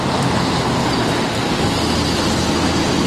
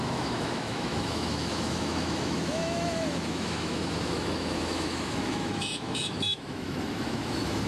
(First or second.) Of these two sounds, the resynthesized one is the second